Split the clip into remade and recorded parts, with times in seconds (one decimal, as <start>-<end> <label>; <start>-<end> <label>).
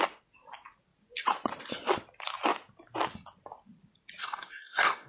0.0-4.2 recorded; 4.2-5.1 remade